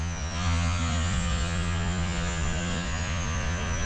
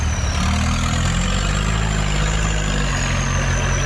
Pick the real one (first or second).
second